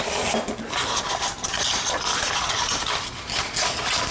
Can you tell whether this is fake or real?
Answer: real